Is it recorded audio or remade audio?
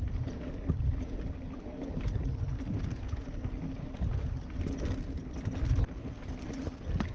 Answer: recorded